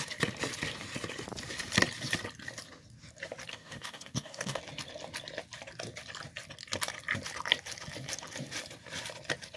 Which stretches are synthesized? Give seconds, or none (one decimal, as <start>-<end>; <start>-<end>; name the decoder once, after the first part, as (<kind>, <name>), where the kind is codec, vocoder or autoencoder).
3.5-4.6 (codec, DAC)